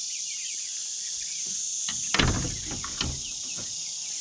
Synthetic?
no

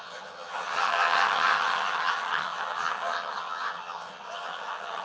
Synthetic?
yes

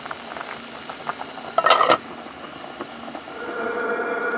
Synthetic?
no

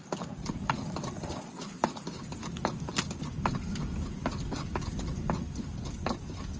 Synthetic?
no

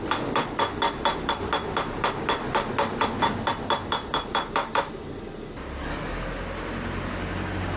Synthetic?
no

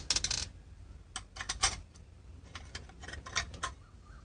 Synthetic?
no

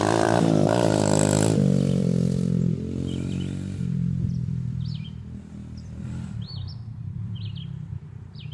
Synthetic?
yes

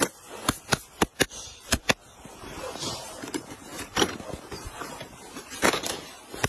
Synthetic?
yes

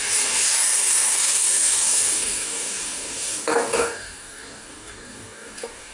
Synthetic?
yes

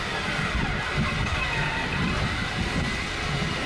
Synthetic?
no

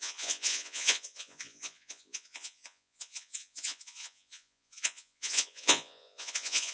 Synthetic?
yes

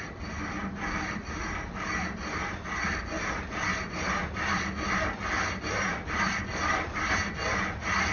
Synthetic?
no